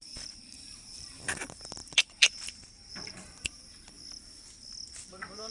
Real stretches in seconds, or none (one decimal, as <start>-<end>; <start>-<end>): 3.6-5.0